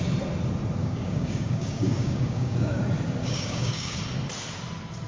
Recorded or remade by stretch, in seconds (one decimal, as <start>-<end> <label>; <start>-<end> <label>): 0.0-0.8 recorded; 0.8-2.8 remade; 2.8-3.2 recorded; 3.2-4.0 remade; 4.0-5.1 recorded